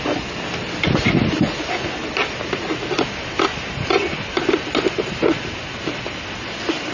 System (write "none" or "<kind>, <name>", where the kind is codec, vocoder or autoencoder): none